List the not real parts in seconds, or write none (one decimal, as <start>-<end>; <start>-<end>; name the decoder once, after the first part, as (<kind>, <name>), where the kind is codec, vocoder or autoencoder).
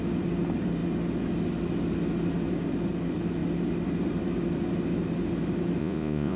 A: 5.8-6.4 (vocoder, Vocos)